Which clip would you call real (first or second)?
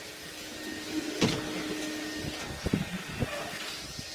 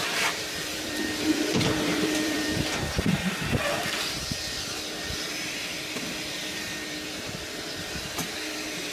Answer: first